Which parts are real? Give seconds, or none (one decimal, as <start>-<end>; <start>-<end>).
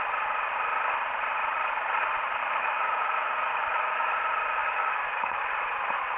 0.0-2.4; 4.1-4.6; 5.4-6.2